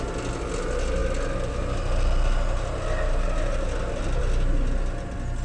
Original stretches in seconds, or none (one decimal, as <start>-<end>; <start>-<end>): 0.0-5.4